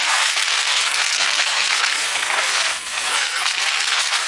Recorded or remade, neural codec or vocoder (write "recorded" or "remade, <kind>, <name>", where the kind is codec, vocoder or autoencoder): remade, codec, SNAC